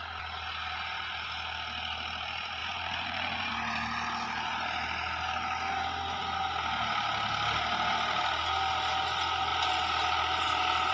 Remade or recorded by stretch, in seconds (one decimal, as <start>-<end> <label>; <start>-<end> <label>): 0.0-2.6 recorded; 2.6-3.5 remade; 3.5-10.9 recorded